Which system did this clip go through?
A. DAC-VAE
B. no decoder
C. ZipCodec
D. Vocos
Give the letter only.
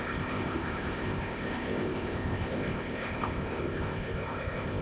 C